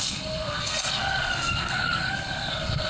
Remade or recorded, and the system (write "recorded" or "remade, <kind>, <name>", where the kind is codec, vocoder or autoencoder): remade, codec, SNAC